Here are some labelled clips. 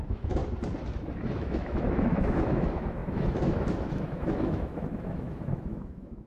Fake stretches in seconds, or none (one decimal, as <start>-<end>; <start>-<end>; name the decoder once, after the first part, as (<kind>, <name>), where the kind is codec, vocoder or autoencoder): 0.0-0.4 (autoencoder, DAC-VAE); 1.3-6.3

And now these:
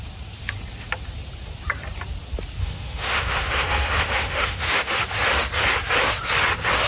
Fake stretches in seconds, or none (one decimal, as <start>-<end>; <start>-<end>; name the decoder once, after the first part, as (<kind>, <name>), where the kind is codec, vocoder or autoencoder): 2.6-4.9 (autoencoder, DAC-VAE)

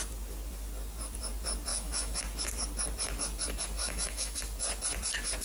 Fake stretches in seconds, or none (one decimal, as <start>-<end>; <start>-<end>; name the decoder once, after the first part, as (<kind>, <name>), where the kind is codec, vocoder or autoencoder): 1.7-2.2 (autoencoder, DAC-VAE); 3.8-4.4

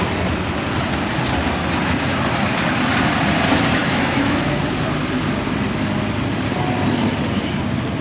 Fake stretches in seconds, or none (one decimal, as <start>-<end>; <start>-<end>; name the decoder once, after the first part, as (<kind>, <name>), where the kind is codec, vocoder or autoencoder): 3.8-4.6 (autoencoder, DAC-VAE)